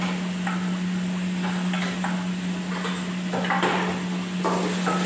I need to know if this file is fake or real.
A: real